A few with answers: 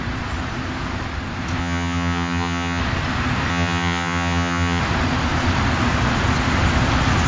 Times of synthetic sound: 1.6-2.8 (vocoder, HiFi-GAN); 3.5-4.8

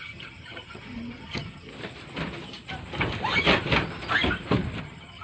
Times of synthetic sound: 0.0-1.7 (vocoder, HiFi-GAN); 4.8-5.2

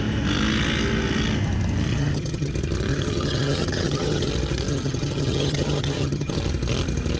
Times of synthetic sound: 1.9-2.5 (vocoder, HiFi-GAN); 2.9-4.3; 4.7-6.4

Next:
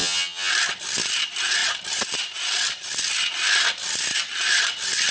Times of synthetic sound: 0.0-0.5 (vocoder, HiFi-GAN)